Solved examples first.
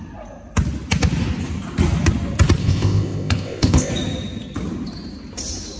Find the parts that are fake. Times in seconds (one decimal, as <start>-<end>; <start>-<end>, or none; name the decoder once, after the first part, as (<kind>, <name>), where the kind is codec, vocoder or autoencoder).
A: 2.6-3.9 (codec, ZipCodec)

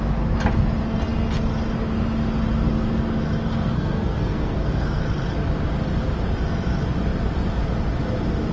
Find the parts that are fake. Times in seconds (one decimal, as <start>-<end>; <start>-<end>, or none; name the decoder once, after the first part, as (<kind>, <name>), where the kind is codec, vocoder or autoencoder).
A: 3.4-5.0 (codec, SNAC)

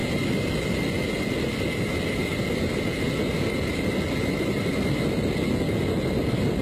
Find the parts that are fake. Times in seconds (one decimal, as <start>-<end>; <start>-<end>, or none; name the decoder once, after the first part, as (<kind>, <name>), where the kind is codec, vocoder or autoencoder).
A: none

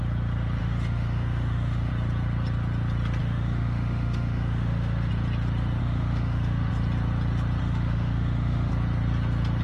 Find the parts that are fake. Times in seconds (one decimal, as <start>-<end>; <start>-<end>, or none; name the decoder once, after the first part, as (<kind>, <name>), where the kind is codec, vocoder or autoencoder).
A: 0.6-1.9 (autoencoder, DAC-VAE); 3.2-5.1; 5.8-6.7; 7.6-8.7

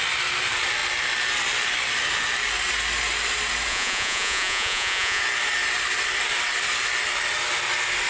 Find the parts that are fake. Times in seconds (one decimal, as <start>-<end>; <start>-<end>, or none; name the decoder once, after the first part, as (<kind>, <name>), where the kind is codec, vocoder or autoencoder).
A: 3.7-5.2 (vocoder, Vocos)

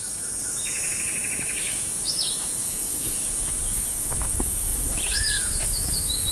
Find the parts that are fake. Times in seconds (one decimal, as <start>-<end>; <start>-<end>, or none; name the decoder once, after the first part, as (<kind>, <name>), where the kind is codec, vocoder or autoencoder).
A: 0.0-6.3 (autoencoder, DAC-VAE)